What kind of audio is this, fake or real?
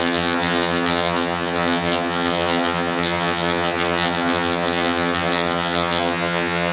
fake